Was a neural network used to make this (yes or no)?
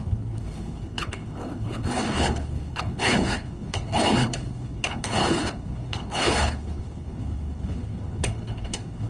yes